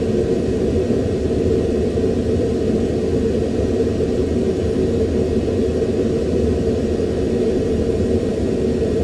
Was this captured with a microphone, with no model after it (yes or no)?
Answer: yes